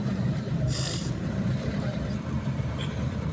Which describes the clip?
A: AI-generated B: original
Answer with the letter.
A